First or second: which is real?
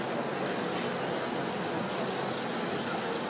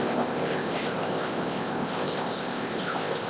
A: first